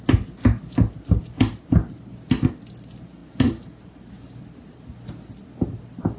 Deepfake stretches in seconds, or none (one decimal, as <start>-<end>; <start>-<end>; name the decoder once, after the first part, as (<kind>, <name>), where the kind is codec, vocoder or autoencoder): none